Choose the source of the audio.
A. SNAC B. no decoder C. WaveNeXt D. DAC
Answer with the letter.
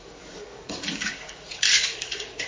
D